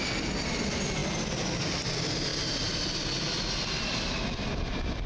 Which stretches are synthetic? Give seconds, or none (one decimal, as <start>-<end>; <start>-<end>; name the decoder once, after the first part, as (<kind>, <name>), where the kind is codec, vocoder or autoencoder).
none